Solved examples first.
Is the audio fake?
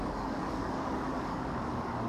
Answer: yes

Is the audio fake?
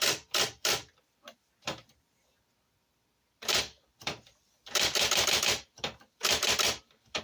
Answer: yes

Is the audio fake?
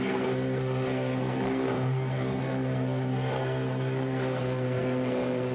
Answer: yes